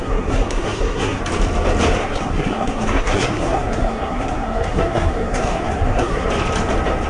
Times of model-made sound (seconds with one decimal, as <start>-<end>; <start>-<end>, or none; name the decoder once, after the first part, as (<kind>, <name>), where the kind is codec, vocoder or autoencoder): 0.0-1.2 (codec, SNAC); 2.0-6.3